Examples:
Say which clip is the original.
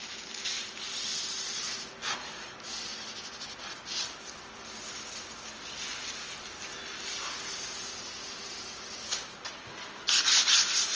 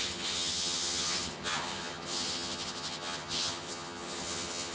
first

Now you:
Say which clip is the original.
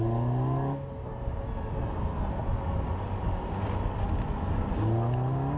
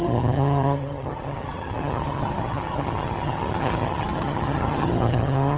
first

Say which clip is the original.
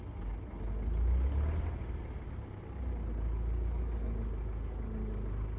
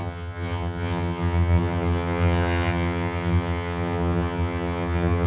first